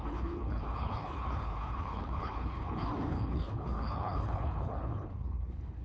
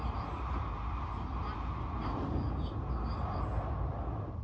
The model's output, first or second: first